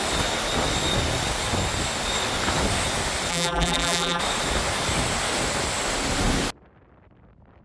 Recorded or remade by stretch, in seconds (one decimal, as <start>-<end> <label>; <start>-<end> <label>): 0.0-3.3 recorded; 3.3-4.2 remade; 4.2-7.6 recorded